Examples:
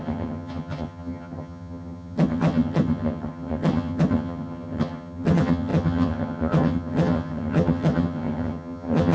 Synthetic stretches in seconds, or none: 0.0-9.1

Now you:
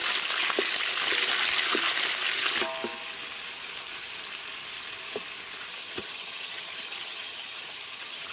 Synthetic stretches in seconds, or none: 5.7-8.3